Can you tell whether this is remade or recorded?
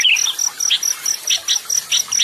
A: recorded